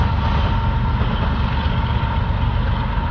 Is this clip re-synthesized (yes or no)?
no